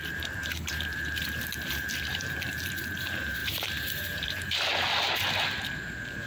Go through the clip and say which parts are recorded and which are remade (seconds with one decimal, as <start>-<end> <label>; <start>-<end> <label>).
0.0-4.7 remade; 4.7-5.7 recorded; 5.7-6.3 remade